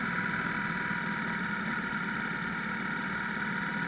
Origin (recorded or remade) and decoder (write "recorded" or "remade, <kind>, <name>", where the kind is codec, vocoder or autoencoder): recorded